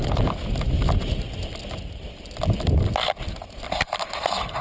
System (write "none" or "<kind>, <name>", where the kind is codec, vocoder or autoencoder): none